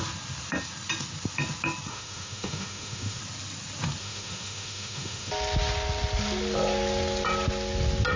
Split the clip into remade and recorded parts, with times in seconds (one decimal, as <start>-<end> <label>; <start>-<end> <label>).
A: 0.0-1.9 recorded; 1.9-3.2 remade; 3.2-4.0 recorded; 4.0-5.3 remade; 5.3-8.2 recorded